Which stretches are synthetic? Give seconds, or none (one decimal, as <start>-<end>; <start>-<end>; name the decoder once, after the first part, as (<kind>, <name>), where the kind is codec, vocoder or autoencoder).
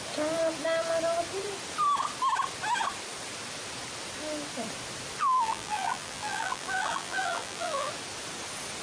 5.2-7.9 (vocoder, BigVGAN v2)